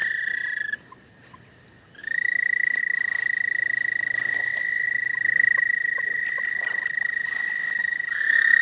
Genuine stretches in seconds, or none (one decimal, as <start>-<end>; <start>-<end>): 0.0-2.0; 2.8-7.8